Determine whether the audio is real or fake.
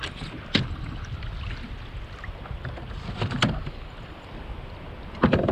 real